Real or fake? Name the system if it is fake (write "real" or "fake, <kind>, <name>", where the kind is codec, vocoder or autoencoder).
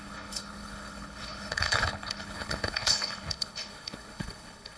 fake, codec, HILCodec